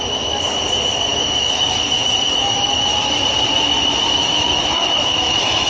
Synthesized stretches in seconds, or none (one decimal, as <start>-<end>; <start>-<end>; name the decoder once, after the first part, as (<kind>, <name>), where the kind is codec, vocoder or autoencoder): 1.1-3.0 (autoencoder, DAC-VAE); 4.2-5.7